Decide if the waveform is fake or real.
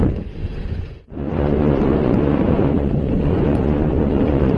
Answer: fake